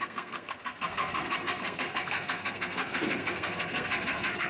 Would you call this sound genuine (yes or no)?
no